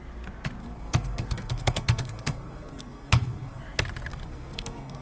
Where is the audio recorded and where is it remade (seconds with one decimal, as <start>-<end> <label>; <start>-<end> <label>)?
0.0-0.6 recorded; 0.6-3.6 remade; 3.6-4.1 recorded; 4.1-5.0 remade